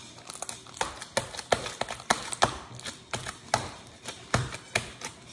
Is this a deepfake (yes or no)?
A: no